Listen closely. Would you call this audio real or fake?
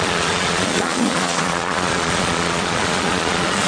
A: fake